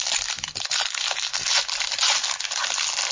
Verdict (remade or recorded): recorded